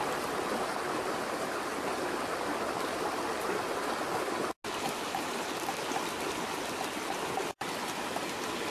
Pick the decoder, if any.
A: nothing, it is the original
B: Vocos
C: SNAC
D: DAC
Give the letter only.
A